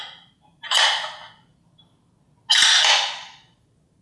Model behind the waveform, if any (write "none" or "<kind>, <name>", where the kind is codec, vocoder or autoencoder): none